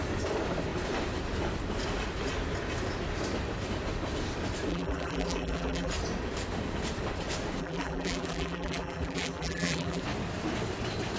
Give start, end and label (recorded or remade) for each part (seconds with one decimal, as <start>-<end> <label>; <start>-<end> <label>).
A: 0.0-4.7 recorded; 4.7-5.9 remade; 5.9-7.6 recorded; 7.6-10.0 remade; 10.0-11.2 recorded